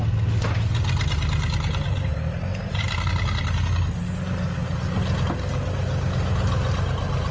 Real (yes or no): yes